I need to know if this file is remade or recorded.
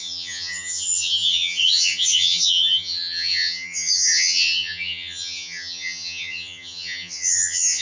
remade